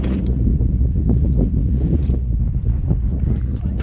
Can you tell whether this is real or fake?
fake